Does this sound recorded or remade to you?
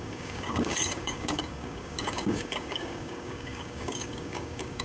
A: remade